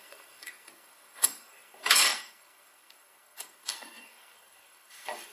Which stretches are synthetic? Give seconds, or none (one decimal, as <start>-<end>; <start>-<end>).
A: 0.0-5.3